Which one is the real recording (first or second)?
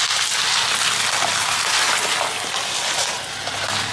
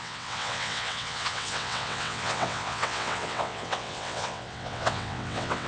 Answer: first